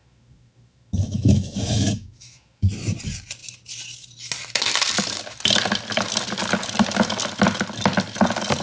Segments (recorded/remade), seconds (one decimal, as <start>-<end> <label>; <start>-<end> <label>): 0.0-2.7 remade; 2.7-8.6 recorded